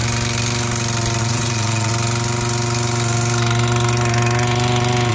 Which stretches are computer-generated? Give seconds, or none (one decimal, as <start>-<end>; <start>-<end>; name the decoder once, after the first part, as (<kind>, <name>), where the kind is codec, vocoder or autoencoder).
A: 1.2-1.9 (vocoder, Vocos)